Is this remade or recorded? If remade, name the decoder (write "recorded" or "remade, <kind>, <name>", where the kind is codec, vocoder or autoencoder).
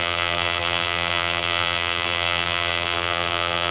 remade, vocoder, BigVGAN v2